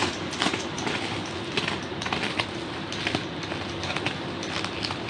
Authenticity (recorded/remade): recorded